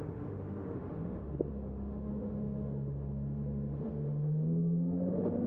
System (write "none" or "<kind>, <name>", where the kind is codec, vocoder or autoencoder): autoencoder, DAC-VAE